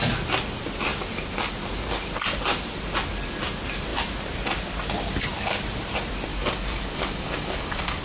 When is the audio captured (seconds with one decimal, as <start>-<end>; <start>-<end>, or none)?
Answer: 0.0-6.3